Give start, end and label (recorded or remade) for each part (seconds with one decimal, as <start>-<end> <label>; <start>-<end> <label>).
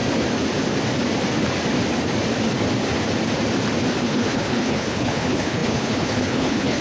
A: 0.0-4.0 recorded; 4.0-6.8 remade